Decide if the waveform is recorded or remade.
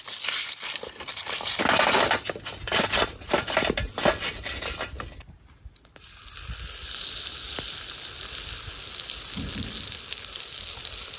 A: recorded